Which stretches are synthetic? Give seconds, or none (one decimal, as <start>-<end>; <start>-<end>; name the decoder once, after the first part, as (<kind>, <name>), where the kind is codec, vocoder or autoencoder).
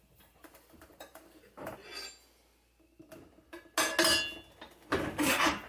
0.0-1.9 (vocoder, BigVGAN v2); 5.3-5.7